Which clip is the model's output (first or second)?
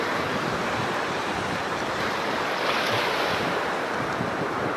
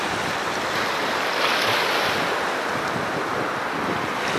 first